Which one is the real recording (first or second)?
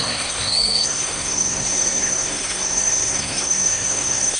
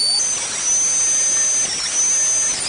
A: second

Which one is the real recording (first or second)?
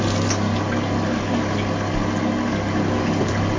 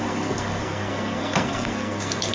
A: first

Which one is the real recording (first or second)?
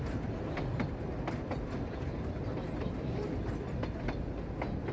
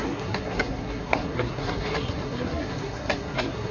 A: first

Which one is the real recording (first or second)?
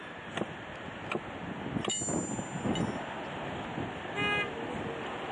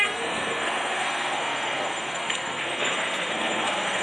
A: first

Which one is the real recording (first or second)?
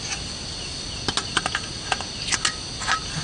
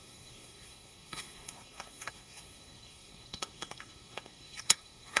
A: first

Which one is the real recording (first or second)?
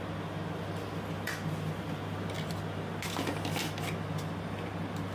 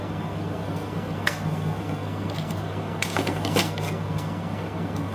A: first